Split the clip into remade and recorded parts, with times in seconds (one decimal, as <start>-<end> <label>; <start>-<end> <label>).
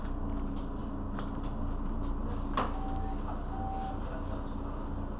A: 0.0-5.2 recorded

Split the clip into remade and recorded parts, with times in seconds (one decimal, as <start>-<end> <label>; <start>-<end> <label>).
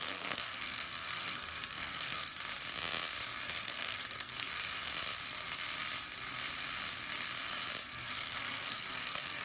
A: 0.0-2.3 remade; 2.3-3.5 recorded; 3.5-4.9 remade; 4.9-7.8 recorded; 7.8-9.4 remade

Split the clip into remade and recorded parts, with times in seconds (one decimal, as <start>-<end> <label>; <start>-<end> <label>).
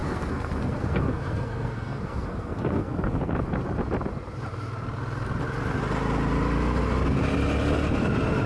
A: 0.0-3.4 remade; 3.4-8.5 recorded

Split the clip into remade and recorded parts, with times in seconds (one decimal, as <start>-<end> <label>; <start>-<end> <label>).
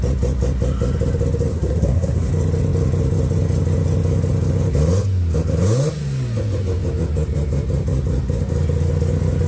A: 0.0-1.5 recorded; 1.5-2.3 remade; 2.3-9.5 recorded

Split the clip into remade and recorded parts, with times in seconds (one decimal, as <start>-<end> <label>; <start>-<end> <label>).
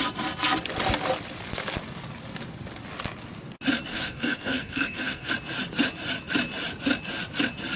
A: 0.0-3.9 recorded; 3.9-5.3 remade; 5.3-7.8 recorded